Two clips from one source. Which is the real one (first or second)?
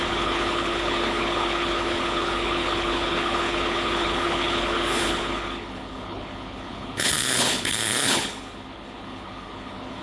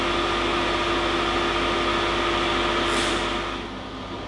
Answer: second